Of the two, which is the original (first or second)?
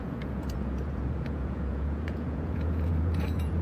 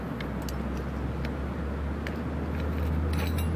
second